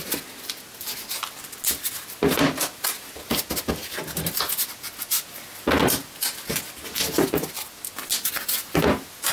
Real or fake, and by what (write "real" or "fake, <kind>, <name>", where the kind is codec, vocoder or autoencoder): real